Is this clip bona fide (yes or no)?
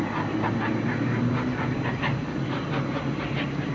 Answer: yes